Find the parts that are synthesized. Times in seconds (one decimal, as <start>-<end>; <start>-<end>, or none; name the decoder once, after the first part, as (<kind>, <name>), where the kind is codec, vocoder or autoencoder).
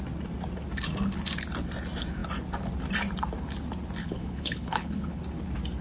4.0-5.2 (codec, HILCodec)